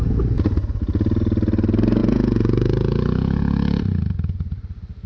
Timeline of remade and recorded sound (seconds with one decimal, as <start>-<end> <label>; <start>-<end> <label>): 0.0-2.0 recorded; 2.0-3.8 remade; 3.8-5.1 recorded